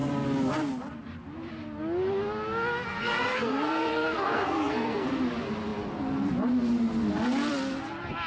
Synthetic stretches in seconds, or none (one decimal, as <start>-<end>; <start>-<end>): 3.0-5.1